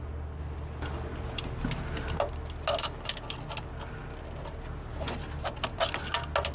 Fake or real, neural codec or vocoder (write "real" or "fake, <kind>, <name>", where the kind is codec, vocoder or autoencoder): real